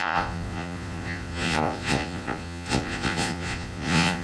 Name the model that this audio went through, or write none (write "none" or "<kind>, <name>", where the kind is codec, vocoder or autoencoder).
vocoder, Vocos